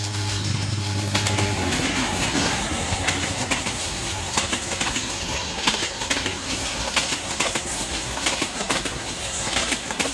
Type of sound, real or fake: fake